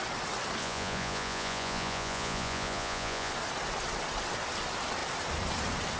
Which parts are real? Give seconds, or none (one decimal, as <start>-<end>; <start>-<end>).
0.0-0.6; 3.3-6.0